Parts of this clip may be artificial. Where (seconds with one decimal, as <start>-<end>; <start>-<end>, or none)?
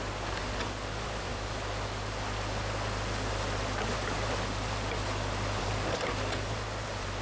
none